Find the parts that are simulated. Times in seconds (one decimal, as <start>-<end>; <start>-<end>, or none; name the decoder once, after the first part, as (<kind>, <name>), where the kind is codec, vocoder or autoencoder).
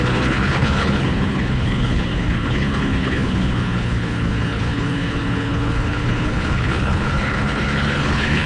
0.0-8.5 (codec, HILCodec)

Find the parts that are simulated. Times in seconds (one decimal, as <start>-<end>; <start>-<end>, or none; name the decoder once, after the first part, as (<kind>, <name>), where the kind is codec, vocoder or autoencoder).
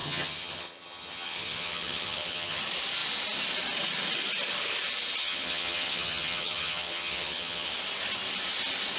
0.0-2.6 (vocoder, HiFi-GAN); 5.2-7.7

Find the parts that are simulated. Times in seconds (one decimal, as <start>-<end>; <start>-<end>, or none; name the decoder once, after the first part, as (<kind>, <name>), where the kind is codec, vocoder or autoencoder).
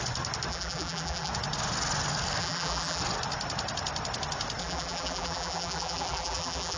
0.5-1.3 (vocoder, BigVGAN v2); 2.4-3.0; 4.6-6.8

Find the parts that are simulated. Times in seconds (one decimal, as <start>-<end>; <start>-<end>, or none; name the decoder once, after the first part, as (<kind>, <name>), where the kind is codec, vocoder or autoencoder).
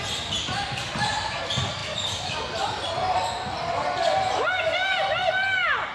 none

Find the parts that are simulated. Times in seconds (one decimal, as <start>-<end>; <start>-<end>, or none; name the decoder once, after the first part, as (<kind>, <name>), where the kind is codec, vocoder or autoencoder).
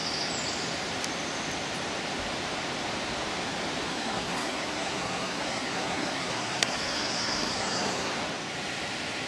3.9-8.1 (codec, SNAC)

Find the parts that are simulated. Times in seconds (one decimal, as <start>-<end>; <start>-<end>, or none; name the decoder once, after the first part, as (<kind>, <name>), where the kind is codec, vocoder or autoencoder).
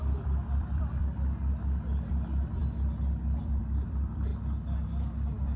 0.0-1.0 (vocoder, BigVGAN v2); 2.1-4.3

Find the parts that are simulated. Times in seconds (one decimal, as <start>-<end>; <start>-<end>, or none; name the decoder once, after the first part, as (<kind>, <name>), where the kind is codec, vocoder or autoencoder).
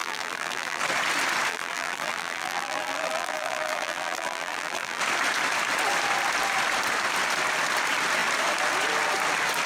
0.0-0.8 (vocoder, BigVGAN v2); 1.5-5.0